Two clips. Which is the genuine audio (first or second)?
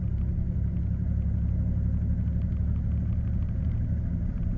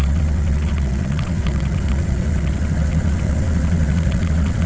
first